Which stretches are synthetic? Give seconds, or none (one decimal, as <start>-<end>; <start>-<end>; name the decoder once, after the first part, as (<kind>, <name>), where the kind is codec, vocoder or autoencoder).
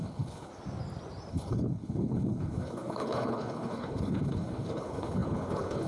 0.0-0.5 (codec, HILCodec); 1.3-5.9